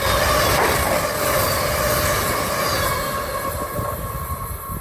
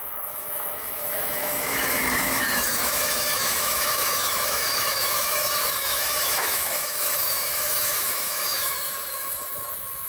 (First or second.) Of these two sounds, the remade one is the second